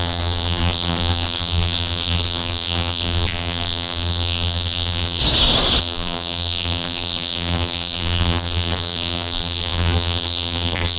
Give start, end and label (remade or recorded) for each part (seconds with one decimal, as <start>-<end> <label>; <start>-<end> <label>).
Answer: 0.0-5.2 remade; 5.2-5.8 recorded; 5.8-11.0 remade